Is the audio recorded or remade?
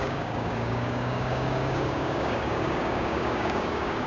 remade